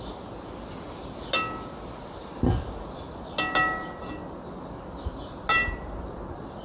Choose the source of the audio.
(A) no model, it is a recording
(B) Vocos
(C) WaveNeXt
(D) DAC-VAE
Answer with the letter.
A